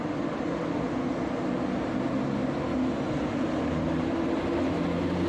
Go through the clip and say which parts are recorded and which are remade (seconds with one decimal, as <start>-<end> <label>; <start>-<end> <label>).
0.0-5.3 recorded